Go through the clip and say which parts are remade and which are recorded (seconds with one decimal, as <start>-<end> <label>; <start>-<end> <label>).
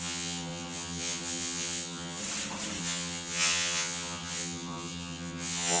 0.0-2.2 remade; 2.2-2.8 recorded; 2.8-5.8 remade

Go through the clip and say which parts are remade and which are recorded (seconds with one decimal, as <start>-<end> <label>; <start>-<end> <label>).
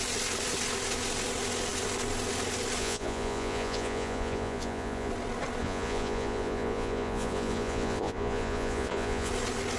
0.0-2.8 recorded; 2.8-5.1 remade; 5.1-5.6 recorded; 5.6-9.3 remade; 9.3-9.8 recorded